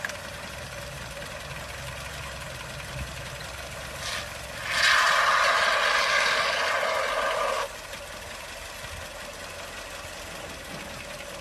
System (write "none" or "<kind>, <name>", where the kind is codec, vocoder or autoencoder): none